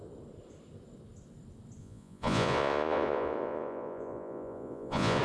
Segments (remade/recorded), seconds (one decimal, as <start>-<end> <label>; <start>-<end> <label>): 0.0-1.8 recorded; 1.8-5.2 remade